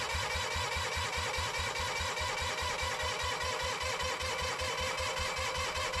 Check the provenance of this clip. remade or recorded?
recorded